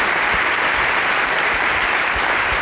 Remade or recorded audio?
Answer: recorded